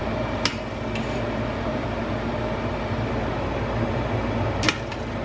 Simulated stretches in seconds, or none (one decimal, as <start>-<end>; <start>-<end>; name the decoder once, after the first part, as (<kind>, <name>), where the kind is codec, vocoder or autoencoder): none